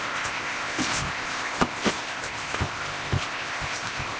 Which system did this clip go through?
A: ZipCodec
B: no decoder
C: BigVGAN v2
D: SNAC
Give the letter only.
A